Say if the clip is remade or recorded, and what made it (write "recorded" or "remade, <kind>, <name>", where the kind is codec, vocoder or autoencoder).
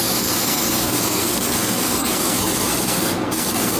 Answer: remade, codec, SNAC